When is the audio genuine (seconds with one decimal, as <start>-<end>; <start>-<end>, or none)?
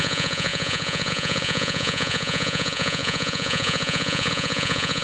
none